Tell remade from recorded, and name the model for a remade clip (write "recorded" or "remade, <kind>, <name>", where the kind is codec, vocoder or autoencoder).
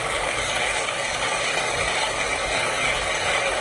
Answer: remade, codec, DAC